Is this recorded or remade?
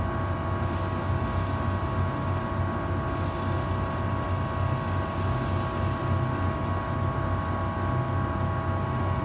recorded